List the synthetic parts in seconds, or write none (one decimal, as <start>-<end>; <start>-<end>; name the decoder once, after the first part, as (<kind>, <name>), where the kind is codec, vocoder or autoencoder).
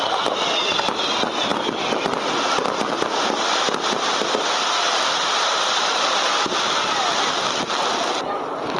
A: 1.5-2.9 (vocoder, BigVGAN v2)